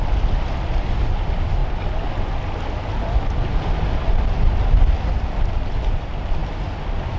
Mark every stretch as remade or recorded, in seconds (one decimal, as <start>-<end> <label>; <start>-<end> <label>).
0.0-7.2 recorded